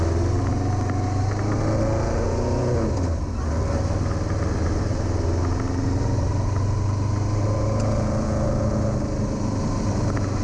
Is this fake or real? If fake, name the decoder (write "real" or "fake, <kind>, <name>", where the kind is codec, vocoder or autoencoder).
real